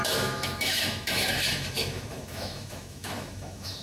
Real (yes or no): no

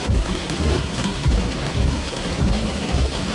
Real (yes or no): no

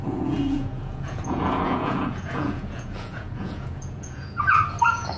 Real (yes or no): no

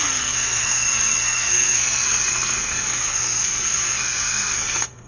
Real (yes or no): no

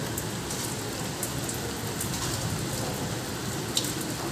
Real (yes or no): yes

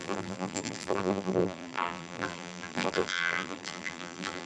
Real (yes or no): no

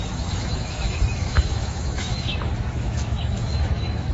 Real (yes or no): no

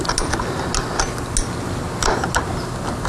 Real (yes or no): yes